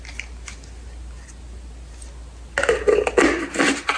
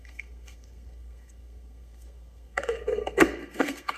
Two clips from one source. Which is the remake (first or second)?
second